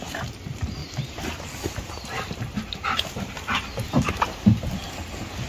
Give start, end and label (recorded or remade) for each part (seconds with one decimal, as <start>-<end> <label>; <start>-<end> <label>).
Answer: 0.0-0.8 recorded; 0.8-4.1 remade; 4.1-5.5 recorded